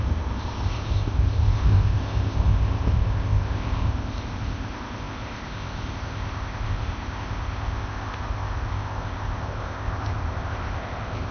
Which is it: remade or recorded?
remade